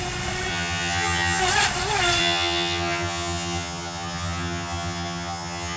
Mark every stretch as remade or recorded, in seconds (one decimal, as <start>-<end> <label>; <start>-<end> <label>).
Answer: 0.0-0.5 recorded; 0.5-1.4 remade; 1.4-2.2 recorded; 2.2-5.8 remade